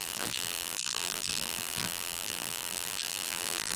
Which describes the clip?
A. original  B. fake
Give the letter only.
B